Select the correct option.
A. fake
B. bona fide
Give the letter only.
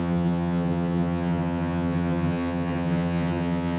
A